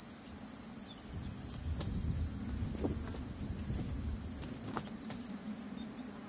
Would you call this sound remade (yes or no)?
no